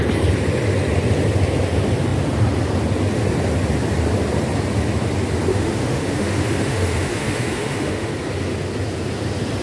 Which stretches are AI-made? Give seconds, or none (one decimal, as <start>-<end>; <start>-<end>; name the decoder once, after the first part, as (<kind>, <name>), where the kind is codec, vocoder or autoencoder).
5.5-8.1 (autoencoder, DAC-VAE)